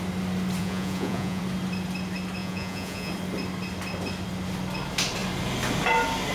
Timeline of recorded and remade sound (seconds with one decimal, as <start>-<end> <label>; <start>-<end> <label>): 0.0-0.6 recorded; 0.6-1.4 remade; 1.4-2.4 recorded; 2.4-3.1 remade; 3.1-6.3 recorded